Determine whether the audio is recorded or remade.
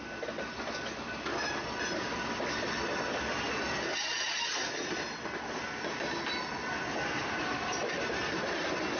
recorded